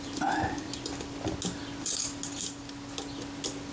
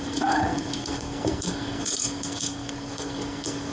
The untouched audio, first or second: first